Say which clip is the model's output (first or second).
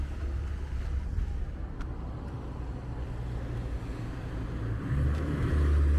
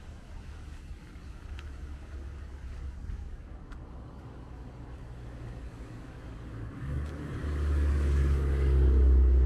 second